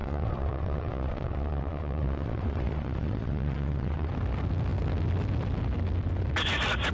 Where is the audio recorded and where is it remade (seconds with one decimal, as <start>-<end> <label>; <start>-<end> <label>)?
0.0-4.1 remade; 4.1-6.9 recorded